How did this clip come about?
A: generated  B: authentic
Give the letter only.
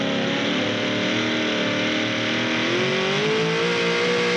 B